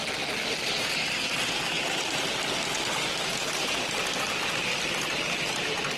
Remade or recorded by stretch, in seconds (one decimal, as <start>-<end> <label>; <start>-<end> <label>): 0.0-6.0 recorded